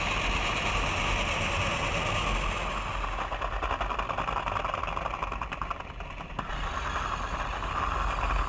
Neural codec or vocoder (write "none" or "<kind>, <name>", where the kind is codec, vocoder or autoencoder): none